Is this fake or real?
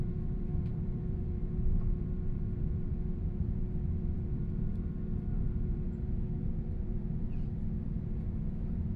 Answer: fake